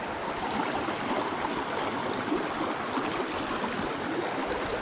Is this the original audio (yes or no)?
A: yes